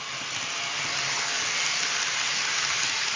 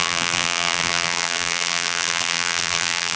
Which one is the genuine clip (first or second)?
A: first